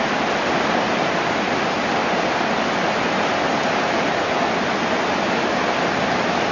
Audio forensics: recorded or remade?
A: recorded